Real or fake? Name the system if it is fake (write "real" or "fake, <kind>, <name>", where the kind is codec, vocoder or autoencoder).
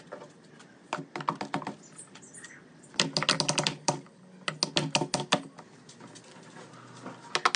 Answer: real